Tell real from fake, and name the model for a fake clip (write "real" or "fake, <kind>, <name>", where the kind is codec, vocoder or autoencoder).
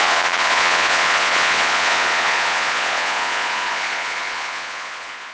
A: fake, vocoder, Vocos